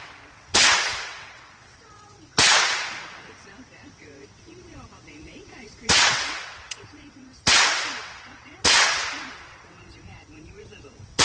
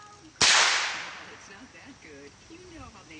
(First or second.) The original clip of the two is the second